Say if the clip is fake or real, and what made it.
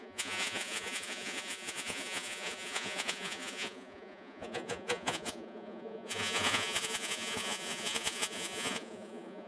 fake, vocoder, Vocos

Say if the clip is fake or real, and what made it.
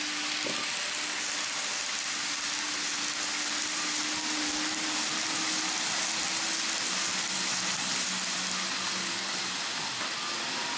real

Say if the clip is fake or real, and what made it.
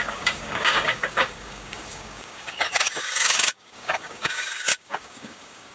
fake, codec, DAC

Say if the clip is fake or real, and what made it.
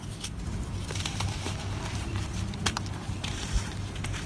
fake, vocoder, BigVGAN v2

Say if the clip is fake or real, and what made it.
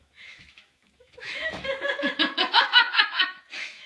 fake, autoencoder, DAC-VAE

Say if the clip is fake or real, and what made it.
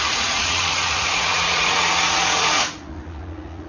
fake, vocoder, Vocos